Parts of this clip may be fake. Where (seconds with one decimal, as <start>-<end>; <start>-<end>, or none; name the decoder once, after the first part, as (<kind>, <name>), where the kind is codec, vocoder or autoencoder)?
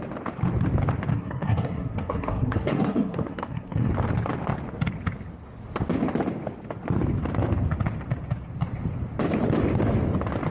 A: 1.1-3.9 (codec, SNAC)